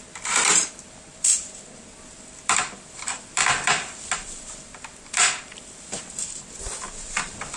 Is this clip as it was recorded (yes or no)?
no